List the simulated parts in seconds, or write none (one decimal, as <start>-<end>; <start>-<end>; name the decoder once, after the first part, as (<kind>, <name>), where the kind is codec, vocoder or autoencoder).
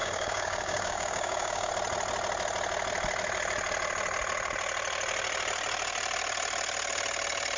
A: 0.0-1.7 (codec, DAC)